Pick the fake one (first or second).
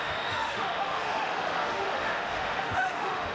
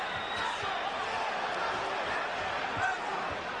first